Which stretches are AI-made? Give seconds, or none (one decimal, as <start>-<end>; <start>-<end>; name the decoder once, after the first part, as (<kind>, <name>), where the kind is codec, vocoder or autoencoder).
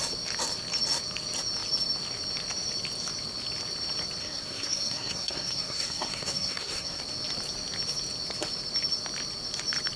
4.2-7.0 (codec, SNAC)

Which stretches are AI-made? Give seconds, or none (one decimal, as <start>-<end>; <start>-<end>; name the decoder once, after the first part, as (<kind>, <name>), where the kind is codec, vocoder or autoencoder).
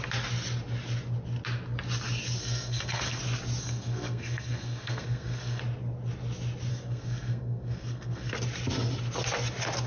2.4-3.2 (codec, SNAC); 3.6-5.6; 6.7-8.3